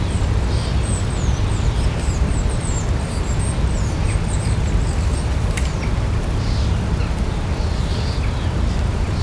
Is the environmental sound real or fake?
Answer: fake